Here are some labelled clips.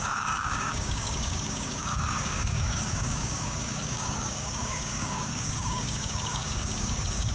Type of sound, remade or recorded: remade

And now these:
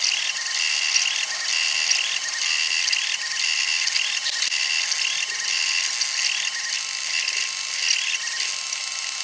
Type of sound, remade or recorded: recorded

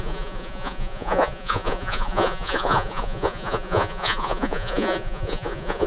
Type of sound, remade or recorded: remade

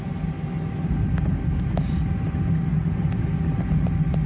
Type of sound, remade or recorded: recorded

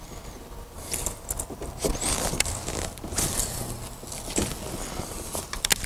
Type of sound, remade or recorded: recorded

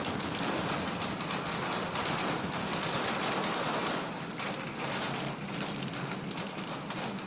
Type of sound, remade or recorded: recorded